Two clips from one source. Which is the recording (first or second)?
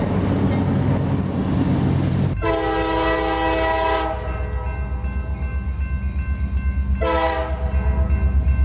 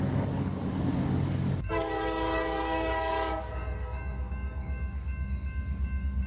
first